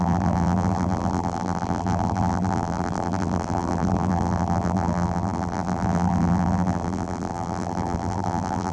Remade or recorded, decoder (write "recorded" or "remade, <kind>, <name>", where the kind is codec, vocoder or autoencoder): remade, vocoder, BigVGAN v2